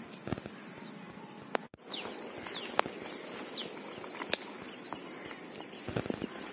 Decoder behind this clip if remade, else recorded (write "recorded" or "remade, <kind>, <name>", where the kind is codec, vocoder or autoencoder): recorded